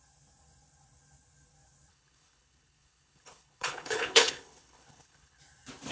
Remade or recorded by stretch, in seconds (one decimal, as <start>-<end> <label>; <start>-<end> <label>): 0.0-1.9 recorded; 1.9-5.4 remade; 5.4-5.9 recorded